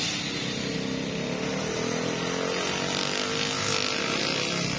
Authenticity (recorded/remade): recorded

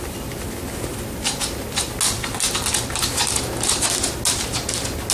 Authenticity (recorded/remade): recorded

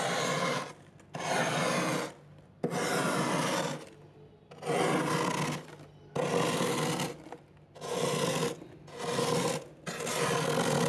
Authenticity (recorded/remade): recorded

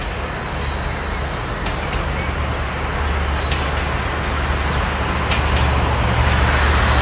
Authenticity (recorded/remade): recorded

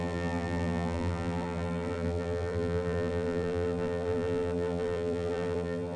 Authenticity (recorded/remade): remade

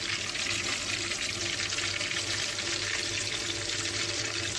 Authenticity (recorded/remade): recorded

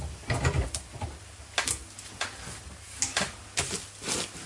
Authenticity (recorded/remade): recorded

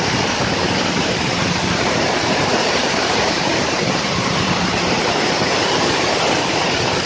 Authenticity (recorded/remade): remade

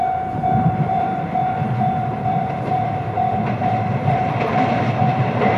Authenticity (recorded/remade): remade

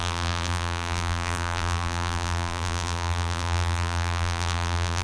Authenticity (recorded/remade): remade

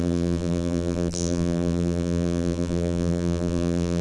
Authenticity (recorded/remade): remade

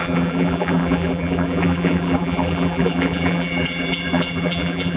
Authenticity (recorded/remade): remade